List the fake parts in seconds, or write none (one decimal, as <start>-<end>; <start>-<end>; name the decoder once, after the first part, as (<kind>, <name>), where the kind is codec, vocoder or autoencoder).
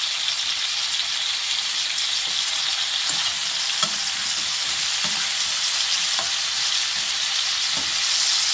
none